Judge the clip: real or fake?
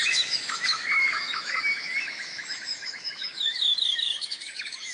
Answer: fake